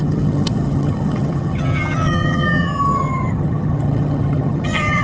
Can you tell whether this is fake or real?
fake